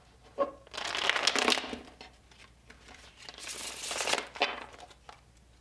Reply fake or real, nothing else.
real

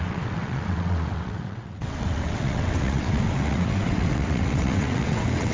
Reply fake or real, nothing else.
fake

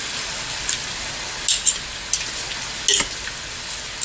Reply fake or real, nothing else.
real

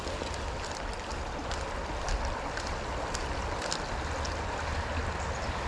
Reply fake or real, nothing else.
real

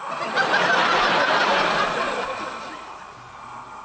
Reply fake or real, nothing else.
real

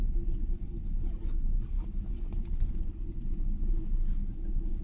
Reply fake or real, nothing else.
real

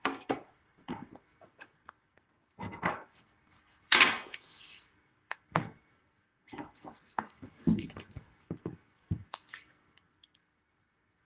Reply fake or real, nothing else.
fake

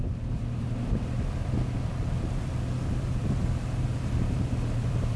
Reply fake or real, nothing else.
fake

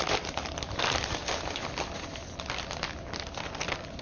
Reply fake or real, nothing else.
real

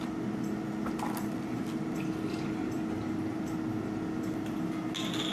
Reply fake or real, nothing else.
real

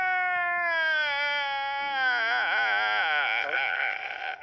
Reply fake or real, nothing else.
real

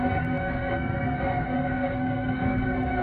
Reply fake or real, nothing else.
fake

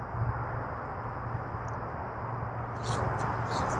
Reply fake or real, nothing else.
real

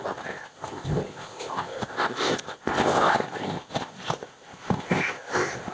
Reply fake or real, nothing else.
fake